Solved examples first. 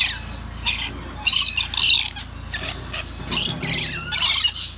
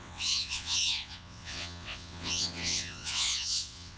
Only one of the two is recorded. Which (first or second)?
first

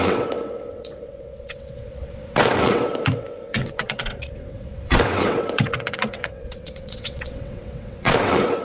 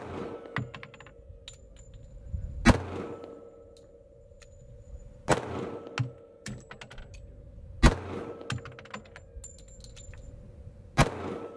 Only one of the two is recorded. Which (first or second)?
second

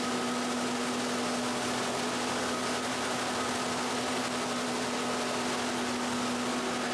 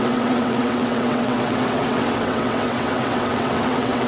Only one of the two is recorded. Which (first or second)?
first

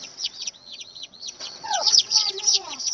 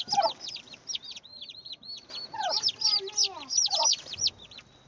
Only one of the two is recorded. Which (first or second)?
second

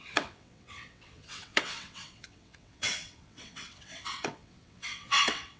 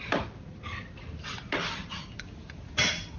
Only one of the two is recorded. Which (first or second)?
second